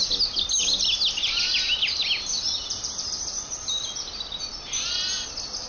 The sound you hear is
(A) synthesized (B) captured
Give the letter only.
B